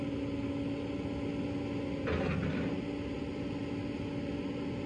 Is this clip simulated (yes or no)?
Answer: no